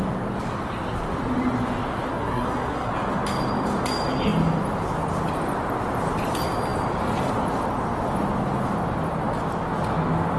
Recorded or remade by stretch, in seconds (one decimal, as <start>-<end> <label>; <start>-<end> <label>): 0.0-2.1 recorded; 2.1-2.9 remade; 2.9-10.4 recorded